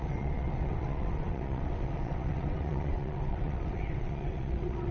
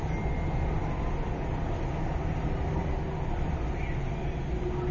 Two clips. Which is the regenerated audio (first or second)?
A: first